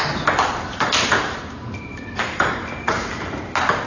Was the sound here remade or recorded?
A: recorded